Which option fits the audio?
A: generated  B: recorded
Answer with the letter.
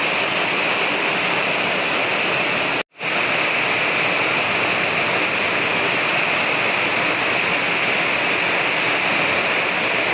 B